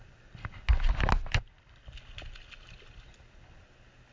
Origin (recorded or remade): recorded